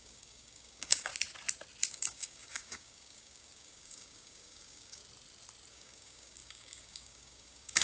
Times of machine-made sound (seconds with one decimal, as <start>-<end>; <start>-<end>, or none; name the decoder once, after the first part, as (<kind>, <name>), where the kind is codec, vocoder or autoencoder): 0.0-1.1 (codec, DAC); 1.9-5.0; 5.7-7.8